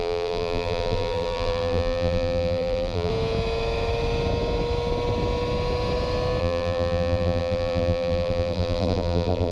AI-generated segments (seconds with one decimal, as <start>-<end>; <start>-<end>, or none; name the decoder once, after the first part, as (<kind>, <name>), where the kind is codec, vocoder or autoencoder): 0.0-3.1 (vocoder, BigVGAN v2); 6.4-9.5